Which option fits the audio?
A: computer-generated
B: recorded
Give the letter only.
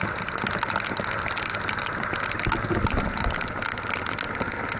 B